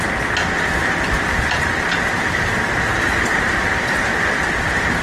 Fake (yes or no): no